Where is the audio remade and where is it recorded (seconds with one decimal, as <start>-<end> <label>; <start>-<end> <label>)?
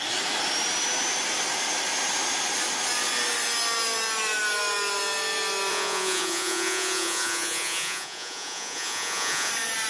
0.0-5.7 recorded; 5.7-9.5 remade; 9.5-9.9 recorded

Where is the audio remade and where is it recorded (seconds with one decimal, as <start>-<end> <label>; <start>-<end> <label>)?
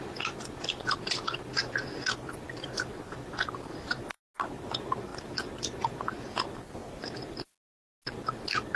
0.0-8.8 recorded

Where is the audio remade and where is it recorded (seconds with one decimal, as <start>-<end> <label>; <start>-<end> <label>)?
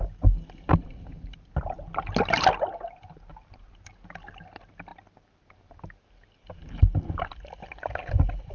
0.0-8.5 recorded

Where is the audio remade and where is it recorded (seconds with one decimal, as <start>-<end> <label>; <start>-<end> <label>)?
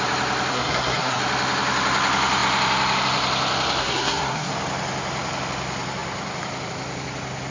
0.0-0.5 recorded; 0.5-1.2 remade; 1.2-3.8 recorded; 3.8-4.5 remade; 4.5-7.5 recorded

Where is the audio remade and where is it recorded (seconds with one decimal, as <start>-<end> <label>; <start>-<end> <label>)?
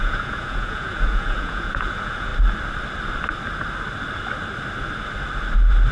0.0-2.3 remade; 2.3-5.9 recorded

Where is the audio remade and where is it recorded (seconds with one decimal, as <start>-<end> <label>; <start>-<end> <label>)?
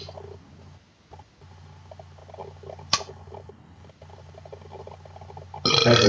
0.0-6.1 recorded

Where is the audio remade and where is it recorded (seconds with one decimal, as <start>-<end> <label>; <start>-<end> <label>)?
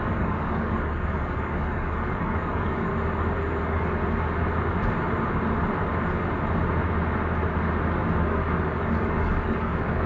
0.0-2.9 remade; 2.9-3.6 recorded; 3.6-4.0 remade; 4.0-8.2 recorded; 8.2-10.1 remade